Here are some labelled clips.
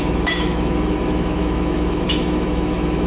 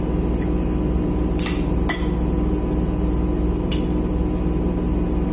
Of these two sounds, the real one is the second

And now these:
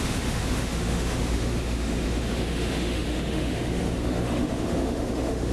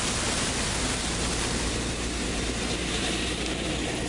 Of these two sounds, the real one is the second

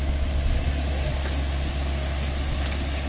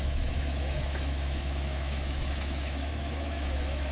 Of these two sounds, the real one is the first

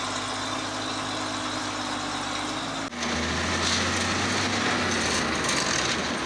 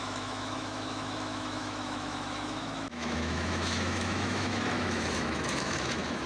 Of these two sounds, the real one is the first